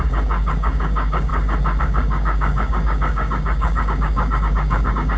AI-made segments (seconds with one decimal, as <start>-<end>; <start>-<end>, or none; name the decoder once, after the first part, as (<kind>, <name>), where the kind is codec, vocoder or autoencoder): 0.0-1.3 (codec, DAC); 1.8-5.2